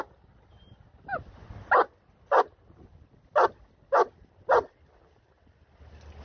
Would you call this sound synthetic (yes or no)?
no